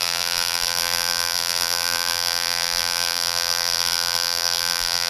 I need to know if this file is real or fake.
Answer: fake